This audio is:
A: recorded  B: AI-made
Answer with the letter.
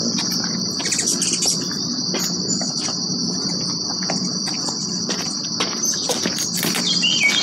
A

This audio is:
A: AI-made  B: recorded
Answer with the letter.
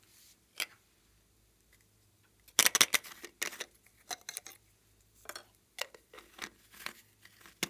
B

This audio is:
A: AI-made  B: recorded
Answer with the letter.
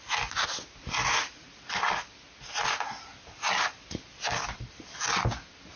B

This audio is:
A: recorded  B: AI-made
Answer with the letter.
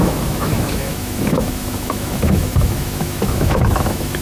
B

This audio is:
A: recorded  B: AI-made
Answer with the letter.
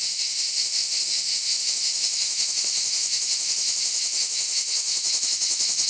B